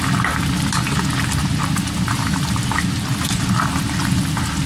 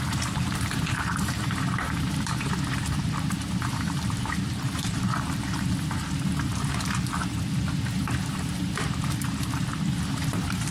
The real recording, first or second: first